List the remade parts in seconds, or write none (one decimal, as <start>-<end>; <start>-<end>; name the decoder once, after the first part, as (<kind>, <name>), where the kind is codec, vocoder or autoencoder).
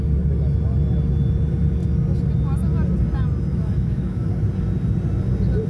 3.5-4.3 (autoencoder, DAC-VAE)